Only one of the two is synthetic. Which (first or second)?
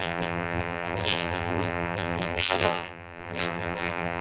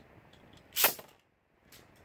first